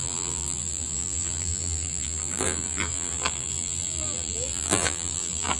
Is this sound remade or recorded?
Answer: remade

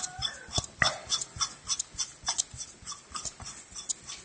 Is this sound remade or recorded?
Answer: recorded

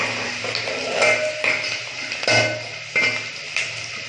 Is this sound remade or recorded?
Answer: recorded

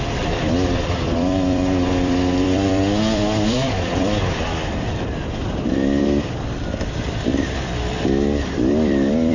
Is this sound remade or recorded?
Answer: remade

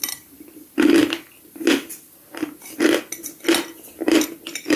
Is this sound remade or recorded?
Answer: recorded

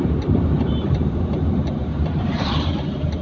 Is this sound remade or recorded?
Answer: remade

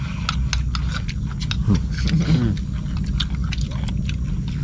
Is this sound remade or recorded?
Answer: recorded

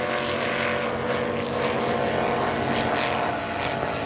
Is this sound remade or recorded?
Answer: recorded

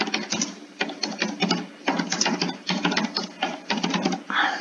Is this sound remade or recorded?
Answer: recorded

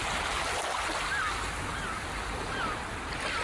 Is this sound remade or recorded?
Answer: recorded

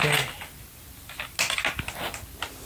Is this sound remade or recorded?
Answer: recorded